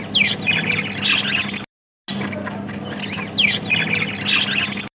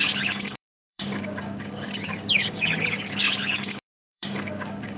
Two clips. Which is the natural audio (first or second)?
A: first